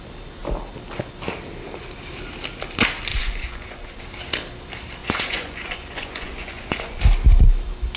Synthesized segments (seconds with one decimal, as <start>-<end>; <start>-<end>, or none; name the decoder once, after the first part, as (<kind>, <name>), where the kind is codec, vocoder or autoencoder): 3.1-4.0 (vocoder, Vocos); 5.0-7.0